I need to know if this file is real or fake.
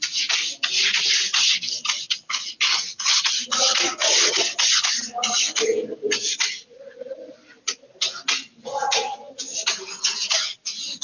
real